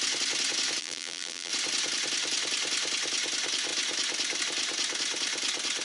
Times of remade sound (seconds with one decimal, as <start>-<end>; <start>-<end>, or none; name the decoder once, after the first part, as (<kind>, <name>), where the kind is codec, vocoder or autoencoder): 0.8-1.5 (vocoder, BigVGAN v2)